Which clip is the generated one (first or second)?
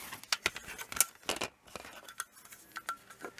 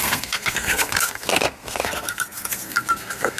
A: second